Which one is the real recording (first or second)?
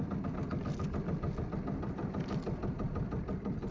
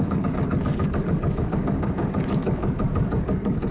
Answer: first